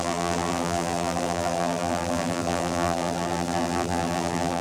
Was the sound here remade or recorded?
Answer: remade